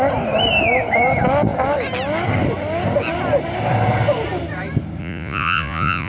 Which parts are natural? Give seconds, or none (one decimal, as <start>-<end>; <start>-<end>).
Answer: 0.0-5.0